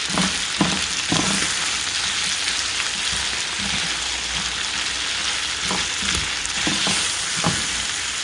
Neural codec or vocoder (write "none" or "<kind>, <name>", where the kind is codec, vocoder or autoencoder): none